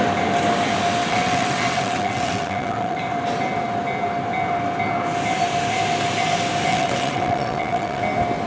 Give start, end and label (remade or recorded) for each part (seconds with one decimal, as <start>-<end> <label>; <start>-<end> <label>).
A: 0.0-1.0 recorded; 1.0-3.0 remade; 3.0-6.7 recorded; 6.7-8.0 remade; 8.0-8.5 recorded

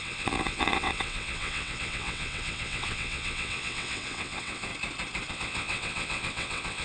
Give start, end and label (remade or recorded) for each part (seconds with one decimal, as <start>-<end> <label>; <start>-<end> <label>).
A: 0.0-4.7 remade; 4.7-5.3 recorded; 5.3-6.8 remade